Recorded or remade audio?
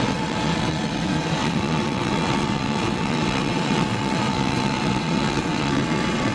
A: remade